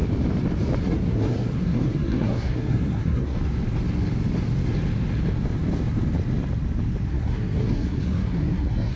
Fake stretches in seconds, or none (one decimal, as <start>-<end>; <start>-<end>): 0.8-3.4; 7.1-9.0